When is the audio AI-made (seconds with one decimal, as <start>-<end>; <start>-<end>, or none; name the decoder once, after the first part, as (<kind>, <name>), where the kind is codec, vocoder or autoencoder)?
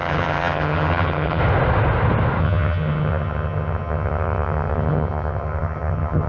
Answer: 0.0-1.4 (vocoder, HiFi-GAN); 2.4-6.3